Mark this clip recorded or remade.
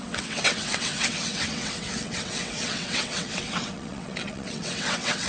remade